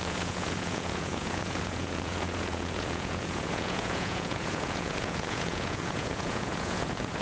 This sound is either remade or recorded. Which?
remade